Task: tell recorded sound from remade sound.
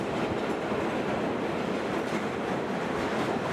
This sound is recorded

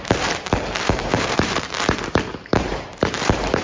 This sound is remade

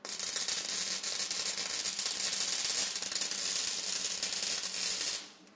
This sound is recorded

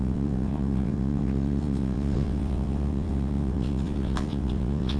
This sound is remade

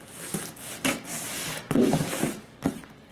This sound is recorded